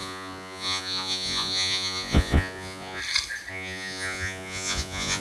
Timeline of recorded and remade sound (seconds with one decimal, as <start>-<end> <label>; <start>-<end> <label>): 0.0-3.0 remade; 3.0-3.5 recorded; 3.5-5.2 remade